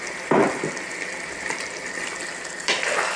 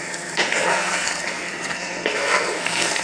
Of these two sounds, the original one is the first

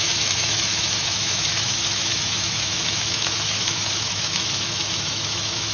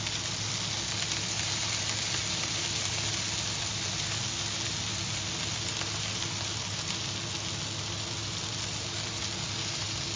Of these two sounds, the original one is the second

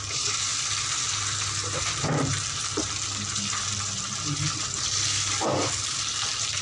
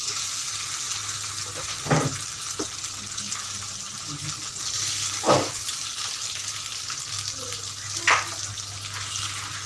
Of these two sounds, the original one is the second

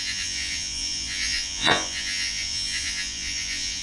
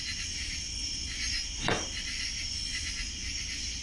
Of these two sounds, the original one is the second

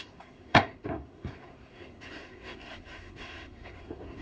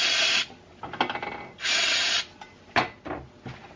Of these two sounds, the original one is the second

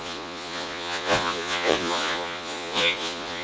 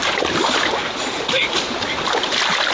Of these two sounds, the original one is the second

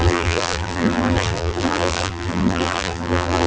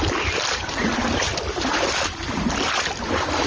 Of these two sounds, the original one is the second